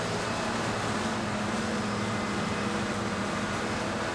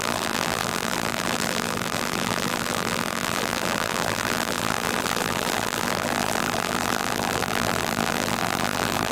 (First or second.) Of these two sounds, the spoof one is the second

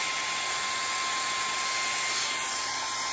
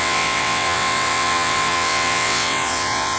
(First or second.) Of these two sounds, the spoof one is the second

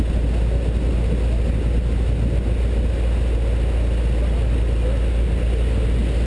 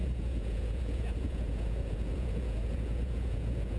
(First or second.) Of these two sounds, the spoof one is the second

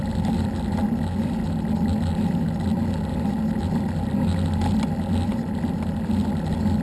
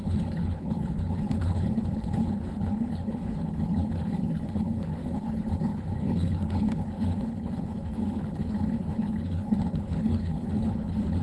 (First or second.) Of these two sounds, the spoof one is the second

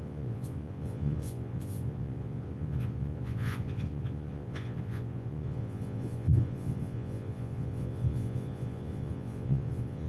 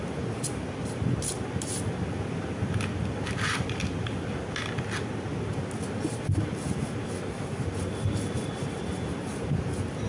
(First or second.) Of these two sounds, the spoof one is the first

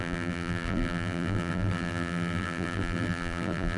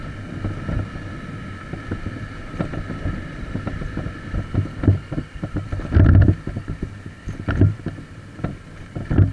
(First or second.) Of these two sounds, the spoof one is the first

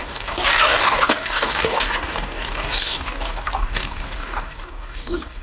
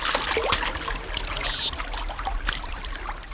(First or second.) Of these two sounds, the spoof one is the first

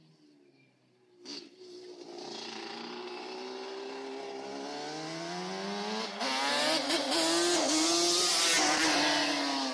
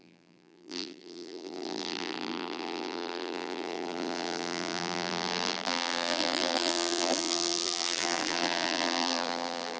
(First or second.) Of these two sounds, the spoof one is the second